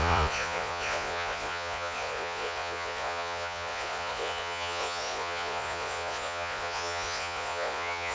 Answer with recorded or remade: remade